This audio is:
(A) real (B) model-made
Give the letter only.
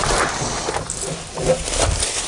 A